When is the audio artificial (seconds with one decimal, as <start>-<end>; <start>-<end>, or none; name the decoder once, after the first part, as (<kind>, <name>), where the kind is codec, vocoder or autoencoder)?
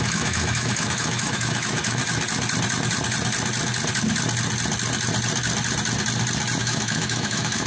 0.0-2.0 (autoencoder, DAC-VAE); 6.6-7.7